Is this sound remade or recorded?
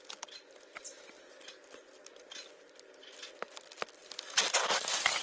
recorded